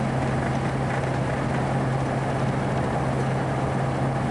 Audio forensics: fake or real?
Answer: real